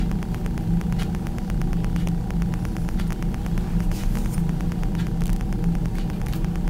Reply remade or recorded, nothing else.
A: recorded